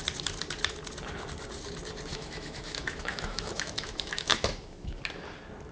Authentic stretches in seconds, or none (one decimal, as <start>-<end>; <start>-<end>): 0.0-2.1; 5.0-5.7